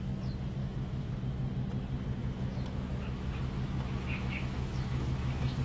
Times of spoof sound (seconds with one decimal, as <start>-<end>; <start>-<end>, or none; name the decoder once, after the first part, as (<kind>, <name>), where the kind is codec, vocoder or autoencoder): 0.6-1.1 (autoencoder, DAC-VAE); 2.2-5.6